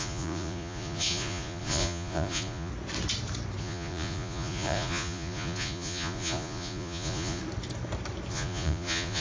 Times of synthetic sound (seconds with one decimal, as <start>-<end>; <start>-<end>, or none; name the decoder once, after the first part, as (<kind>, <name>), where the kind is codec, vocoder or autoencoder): 0.0-2.7 (vocoder, Vocos); 3.6-7.4; 8.3-9.2